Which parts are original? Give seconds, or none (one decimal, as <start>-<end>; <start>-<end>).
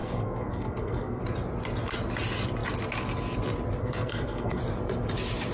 1.2-3.8; 4.6-5.5